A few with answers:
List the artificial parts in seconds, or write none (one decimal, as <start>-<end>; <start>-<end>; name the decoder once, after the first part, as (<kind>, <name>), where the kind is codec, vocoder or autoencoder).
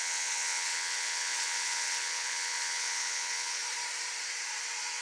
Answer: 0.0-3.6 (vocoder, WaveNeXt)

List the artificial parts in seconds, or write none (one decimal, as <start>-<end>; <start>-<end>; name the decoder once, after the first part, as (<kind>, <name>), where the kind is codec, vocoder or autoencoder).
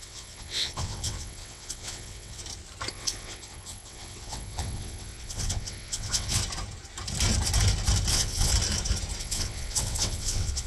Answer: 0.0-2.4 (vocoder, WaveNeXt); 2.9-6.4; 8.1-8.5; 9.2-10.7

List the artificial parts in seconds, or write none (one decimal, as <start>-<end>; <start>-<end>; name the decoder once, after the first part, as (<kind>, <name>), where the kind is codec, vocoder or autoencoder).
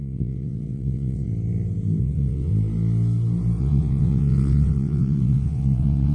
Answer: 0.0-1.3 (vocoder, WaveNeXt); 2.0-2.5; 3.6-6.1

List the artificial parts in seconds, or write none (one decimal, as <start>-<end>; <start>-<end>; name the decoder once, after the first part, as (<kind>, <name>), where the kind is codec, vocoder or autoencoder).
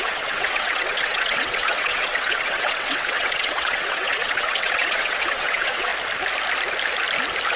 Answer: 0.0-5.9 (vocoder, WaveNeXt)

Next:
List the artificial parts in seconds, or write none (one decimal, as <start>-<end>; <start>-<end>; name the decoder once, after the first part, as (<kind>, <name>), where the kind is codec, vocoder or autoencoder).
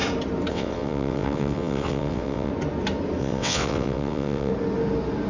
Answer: 0.5-2.5 (vocoder, WaveNeXt); 3.2-4.5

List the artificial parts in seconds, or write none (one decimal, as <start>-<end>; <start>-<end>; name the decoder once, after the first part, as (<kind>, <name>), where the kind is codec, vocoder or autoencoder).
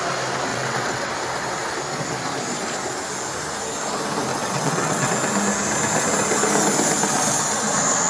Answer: 0.5-1.1 (vocoder, WaveNeXt); 4.3-5.1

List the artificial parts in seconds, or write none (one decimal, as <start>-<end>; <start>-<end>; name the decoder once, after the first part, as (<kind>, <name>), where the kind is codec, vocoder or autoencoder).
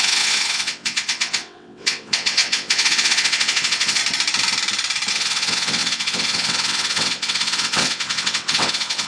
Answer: 0.0-4.0 (vocoder, WaveNeXt); 5.1-9.1